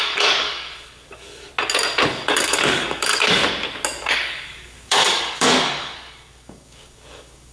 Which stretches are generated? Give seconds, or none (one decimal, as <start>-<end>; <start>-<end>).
0.0-1.5; 2.1-3.4; 4.0-7.5